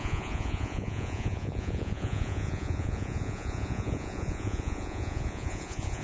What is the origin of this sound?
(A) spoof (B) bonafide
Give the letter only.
A